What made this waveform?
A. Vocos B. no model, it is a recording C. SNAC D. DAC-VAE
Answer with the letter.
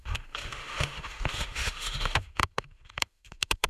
D